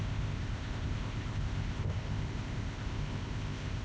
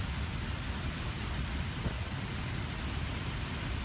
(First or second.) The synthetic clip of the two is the first